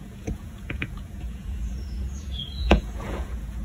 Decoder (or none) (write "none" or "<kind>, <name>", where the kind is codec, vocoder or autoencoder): vocoder, Vocos